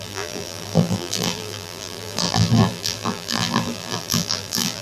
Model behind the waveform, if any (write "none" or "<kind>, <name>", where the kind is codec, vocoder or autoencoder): vocoder, BigVGAN v2